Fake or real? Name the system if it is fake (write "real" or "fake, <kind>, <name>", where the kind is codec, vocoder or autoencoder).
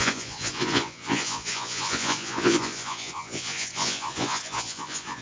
fake, vocoder, Vocos